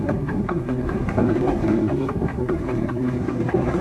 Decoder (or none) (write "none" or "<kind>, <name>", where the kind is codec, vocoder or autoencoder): codec, SNAC